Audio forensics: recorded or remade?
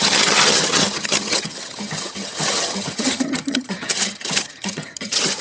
remade